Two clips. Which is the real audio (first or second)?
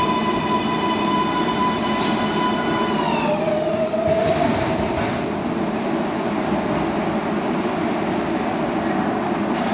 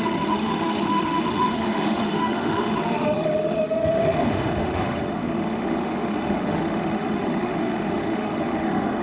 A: first